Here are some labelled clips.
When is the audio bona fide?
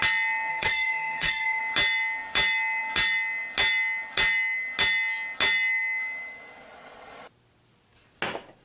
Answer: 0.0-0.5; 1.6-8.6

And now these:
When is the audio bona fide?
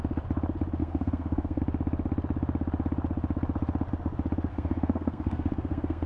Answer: 0.0-0.8; 1.6-4.5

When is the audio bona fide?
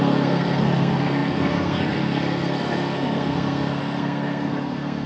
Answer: none